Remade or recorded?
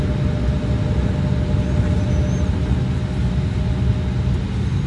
recorded